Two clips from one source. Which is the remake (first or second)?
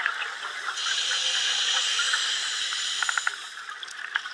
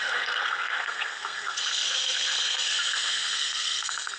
second